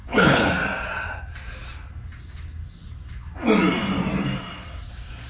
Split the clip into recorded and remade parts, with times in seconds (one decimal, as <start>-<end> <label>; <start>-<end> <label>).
0.0-0.5 remade; 0.5-5.3 recorded

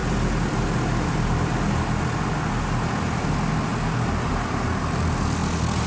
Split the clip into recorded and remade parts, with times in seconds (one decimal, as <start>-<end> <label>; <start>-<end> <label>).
0.0-5.9 recorded